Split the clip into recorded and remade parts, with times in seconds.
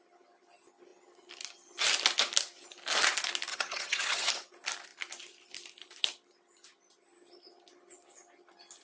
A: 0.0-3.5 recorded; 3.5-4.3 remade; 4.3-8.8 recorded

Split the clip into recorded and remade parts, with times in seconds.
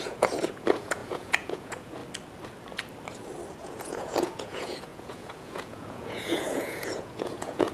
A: 0.0-2.0 remade; 2.0-3.6 recorded; 3.6-7.7 remade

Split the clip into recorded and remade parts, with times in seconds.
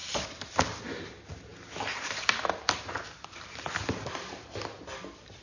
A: 0.0-5.4 recorded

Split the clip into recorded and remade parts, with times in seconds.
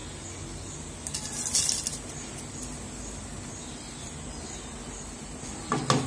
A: 0.0-6.1 recorded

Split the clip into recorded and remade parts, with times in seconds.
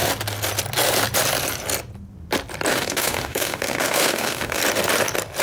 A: 0.0-2.7 recorded; 2.7-4.6 remade; 4.6-5.4 recorded